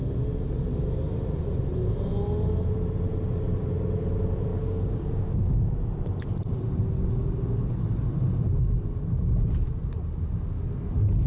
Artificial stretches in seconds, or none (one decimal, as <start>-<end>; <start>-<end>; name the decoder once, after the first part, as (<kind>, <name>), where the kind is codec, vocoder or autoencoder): 4.5-5.8 (codec, DAC)